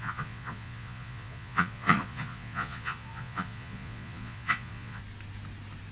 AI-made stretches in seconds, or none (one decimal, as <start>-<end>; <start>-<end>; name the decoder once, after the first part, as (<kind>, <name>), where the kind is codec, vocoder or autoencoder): 0.0-5.0 (vocoder, Vocos)

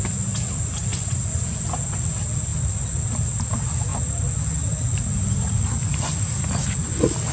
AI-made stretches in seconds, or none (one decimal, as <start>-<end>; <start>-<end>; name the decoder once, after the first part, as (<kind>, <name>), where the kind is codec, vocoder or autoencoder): 0.9-1.6 (vocoder, Vocos)

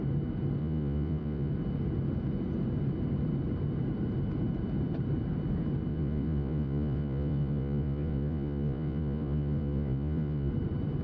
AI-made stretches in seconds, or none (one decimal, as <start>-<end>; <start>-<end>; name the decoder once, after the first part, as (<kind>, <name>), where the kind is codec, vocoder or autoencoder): 0.6-1.5 (vocoder, Vocos); 5.9-10.5

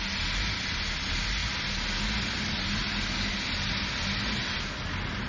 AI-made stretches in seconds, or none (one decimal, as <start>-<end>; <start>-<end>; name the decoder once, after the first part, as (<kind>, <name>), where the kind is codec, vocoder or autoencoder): none

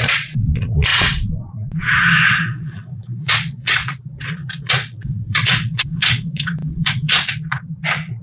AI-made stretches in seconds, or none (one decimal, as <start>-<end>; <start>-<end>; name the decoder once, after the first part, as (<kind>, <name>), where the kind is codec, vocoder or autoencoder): 0.0-8.2 (vocoder, Vocos)

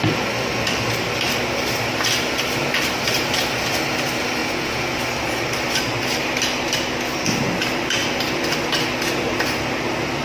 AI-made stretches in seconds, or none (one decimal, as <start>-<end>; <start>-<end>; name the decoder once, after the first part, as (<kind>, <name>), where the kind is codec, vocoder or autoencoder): 4.4-5.0 (vocoder, Vocos)

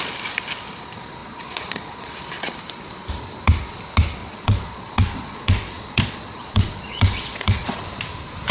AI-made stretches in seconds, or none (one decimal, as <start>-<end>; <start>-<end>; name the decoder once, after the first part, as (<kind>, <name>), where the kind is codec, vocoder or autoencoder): 1.2-2.2 (vocoder, Vocos); 4.2-7.8

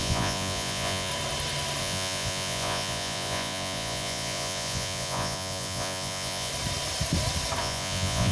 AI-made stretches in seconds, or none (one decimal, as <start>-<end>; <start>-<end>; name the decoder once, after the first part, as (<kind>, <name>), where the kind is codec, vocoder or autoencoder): 0.0-1.1 (vocoder, Vocos); 1.8-6.5; 7.6-8.3